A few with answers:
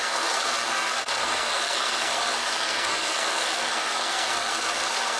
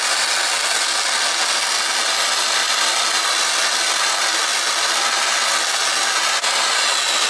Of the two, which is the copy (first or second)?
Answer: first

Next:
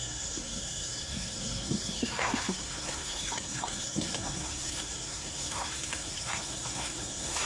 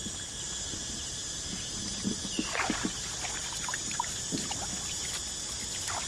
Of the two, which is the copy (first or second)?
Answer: first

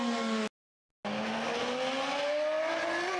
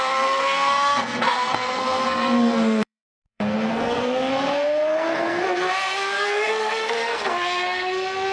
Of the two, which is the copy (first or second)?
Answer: second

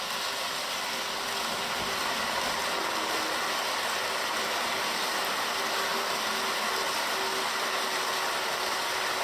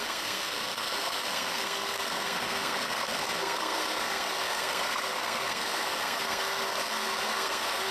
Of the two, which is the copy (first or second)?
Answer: second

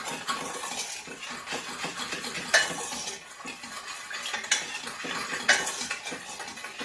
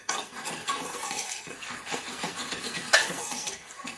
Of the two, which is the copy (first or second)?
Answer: second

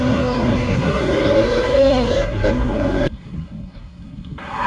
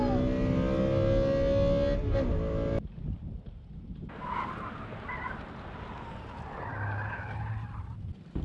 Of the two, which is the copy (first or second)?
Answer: first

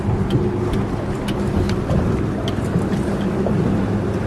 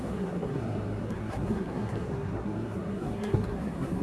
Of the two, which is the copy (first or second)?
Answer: second